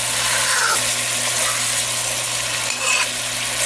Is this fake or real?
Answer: real